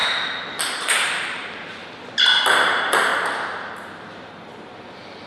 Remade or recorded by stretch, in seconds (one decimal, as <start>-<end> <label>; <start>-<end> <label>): 0.0-0.7 recorded; 0.7-1.8 remade; 1.8-2.4 recorded; 2.4-3.1 remade; 3.1-3.9 recorded; 3.9-5.3 remade